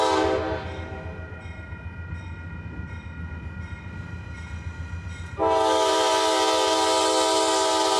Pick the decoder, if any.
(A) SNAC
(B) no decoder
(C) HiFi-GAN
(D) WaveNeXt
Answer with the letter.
B